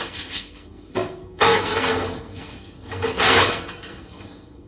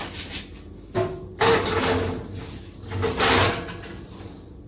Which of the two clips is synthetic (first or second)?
first